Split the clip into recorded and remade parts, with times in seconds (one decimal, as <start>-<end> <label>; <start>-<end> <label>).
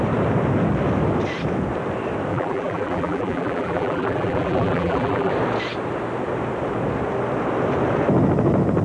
0.0-2.3 recorded; 2.3-5.3 remade; 5.3-8.8 recorded